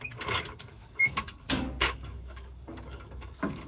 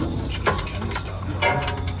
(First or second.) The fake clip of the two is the first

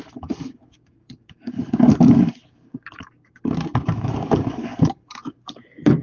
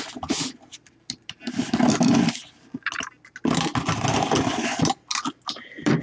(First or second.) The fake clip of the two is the first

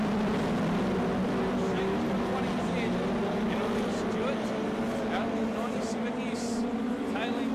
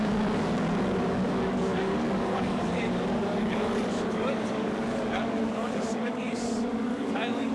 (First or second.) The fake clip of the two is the second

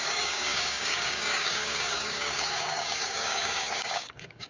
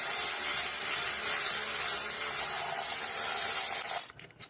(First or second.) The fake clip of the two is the first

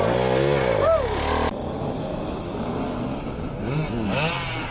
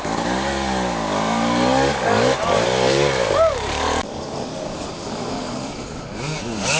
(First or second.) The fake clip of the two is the second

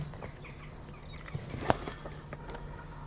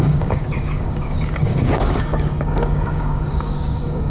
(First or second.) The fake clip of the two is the second